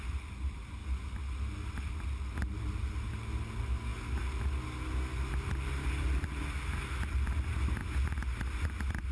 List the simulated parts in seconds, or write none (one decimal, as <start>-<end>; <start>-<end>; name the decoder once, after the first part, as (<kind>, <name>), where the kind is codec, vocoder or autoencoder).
none